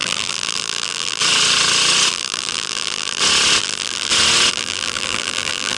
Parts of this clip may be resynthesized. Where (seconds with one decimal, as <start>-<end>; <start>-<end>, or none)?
0.0-1.2; 2.1-3.2; 3.6-4.1; 4.5-5.8